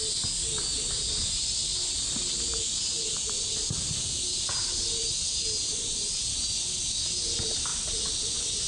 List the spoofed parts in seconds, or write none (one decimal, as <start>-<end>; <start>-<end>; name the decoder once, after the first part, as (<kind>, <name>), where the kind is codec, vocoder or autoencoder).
none